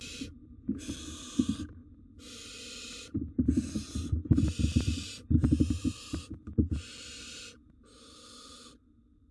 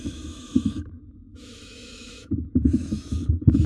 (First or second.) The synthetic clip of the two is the second